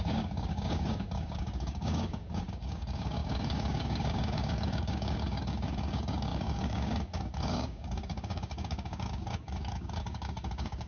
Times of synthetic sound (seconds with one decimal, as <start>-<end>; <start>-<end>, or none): 0.0-10.9